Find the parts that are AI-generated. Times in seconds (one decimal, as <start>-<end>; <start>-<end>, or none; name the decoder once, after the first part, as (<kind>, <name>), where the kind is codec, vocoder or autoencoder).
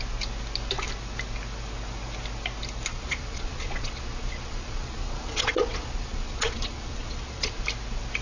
2.9-7.6 (vocoder, Vocos)